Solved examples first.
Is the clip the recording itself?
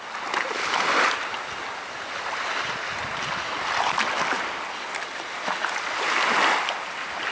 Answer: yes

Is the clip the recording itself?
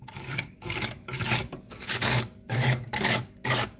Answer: no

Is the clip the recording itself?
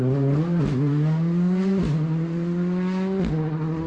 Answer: yes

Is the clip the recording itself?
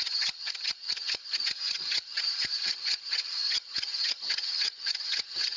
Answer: no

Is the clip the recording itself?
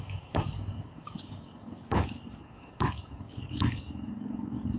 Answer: no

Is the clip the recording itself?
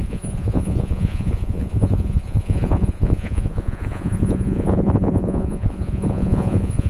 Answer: no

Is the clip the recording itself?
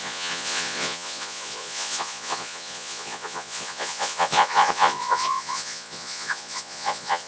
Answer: no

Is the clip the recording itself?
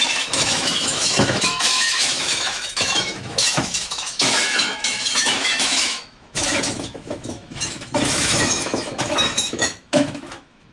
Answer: no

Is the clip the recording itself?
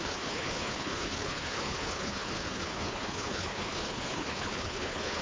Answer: no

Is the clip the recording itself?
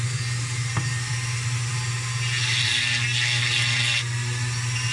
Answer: yes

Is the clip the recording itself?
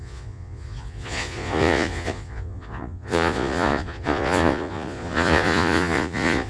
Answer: no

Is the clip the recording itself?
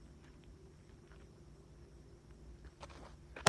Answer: yes